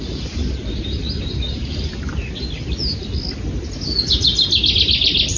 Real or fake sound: real